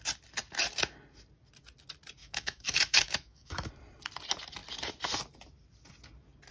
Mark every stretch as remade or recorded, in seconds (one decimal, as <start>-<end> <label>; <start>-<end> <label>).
0.0-2.2 recorded; 2.2-3.7 remade; 3.7-6.5 recorded